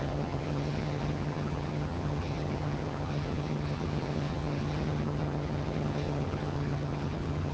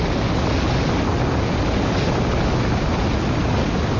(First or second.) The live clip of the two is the second